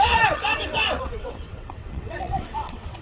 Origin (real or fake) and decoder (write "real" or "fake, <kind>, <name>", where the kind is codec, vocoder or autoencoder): fake, vocoder, WaveNeXt